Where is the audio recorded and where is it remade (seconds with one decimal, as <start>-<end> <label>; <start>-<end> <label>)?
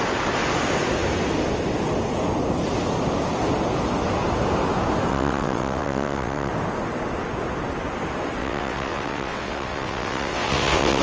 0.0-5.1 recorded; 5.1-6.5 remade; 6.5-8.4 recorded; 8.4-11.0 remade